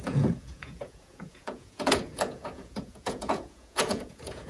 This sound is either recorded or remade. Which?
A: remade